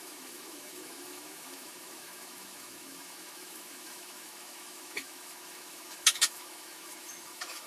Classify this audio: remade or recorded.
remade